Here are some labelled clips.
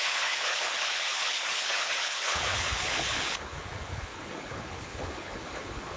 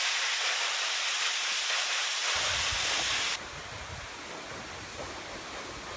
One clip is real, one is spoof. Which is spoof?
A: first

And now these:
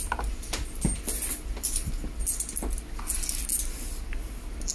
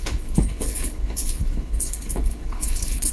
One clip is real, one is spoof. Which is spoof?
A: second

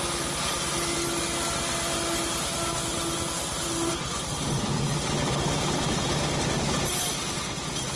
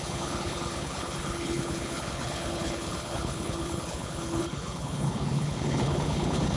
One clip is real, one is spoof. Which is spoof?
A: second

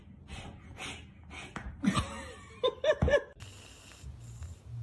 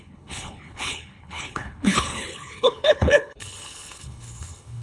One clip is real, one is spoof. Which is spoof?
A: second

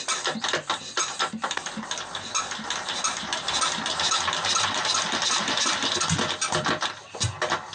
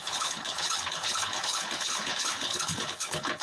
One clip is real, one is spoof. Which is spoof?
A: second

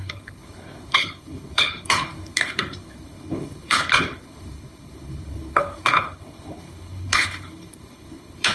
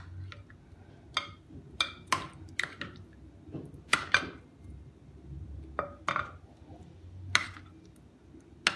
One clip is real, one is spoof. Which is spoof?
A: first